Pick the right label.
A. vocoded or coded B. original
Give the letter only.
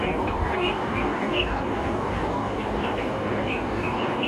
A